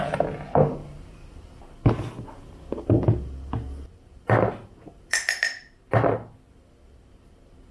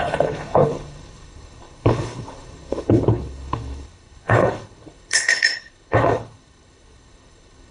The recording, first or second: first